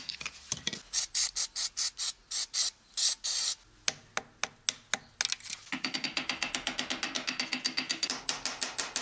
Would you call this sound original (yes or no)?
yes